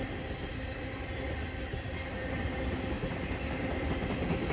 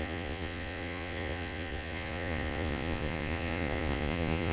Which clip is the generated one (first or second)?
second